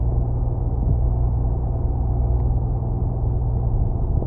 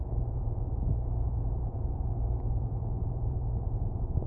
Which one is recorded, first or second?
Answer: first